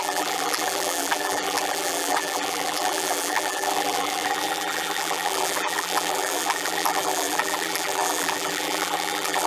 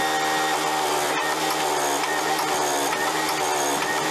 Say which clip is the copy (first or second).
first